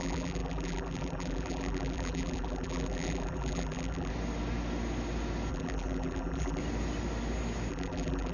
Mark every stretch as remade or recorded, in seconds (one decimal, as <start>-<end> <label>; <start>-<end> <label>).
0.0-4.1 remade; 4.1-5.5 recorded; 5.5-6.6 remade; 6.6-7.7 recorded; 7.7-8.3 remade